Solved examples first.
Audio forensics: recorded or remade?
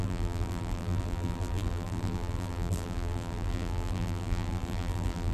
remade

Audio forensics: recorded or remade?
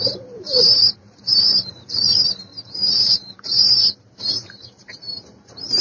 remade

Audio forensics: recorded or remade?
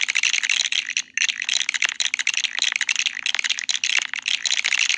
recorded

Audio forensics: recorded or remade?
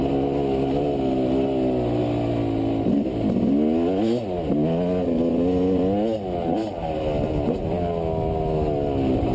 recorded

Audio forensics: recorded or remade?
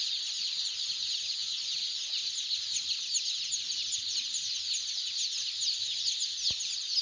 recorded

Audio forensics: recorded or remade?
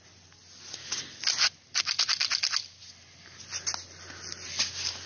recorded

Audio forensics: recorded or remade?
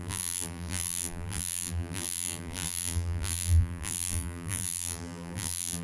remade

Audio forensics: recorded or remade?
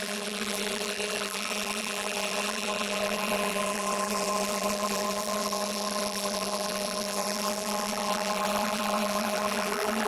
remade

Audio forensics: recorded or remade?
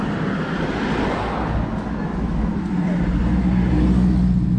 recorded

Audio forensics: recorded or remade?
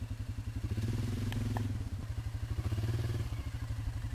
remade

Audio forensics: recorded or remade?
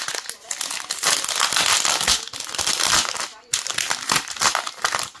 recorded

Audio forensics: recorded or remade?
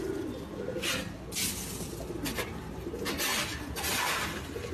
recorded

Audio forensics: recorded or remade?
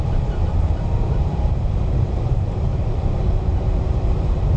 remade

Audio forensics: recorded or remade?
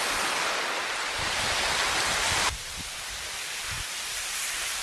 remade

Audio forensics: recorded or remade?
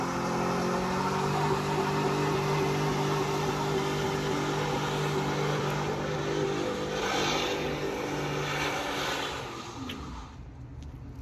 recorded